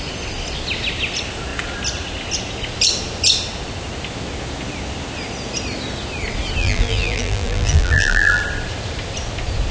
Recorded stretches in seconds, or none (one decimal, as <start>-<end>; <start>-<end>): 0.0-6.6; 8.4-9.7